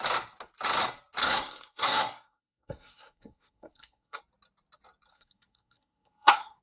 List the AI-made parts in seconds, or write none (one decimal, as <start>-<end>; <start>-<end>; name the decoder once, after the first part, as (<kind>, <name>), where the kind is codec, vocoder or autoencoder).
1.2-4.2 (codec, SNAC); 5.1-6.6